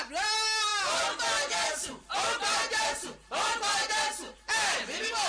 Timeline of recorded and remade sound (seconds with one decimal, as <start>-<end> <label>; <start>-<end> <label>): 0.0-5.3 recorded